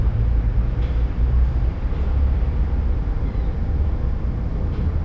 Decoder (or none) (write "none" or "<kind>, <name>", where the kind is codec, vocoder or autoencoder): none